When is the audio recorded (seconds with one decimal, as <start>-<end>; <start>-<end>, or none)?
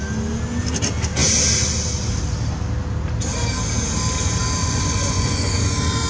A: 0.0-4.6; 5.5-6.1